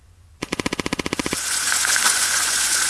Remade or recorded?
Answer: remade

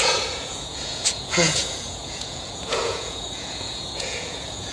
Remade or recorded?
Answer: remade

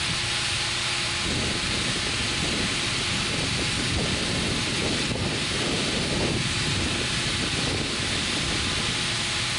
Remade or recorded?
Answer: recorded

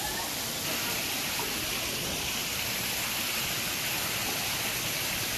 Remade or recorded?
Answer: recorded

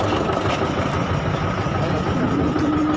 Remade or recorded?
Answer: recorded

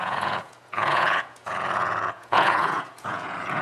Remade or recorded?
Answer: remade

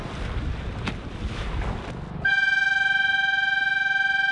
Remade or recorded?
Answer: recorded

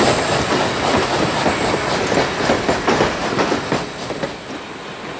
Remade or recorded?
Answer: recorded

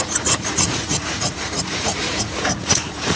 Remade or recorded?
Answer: remade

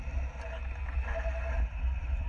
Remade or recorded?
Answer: recorded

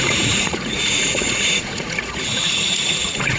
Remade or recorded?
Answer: remade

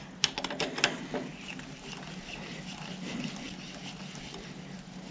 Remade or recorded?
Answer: recorded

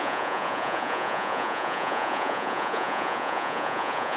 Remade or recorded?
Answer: remade